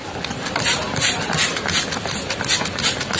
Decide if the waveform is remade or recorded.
recorded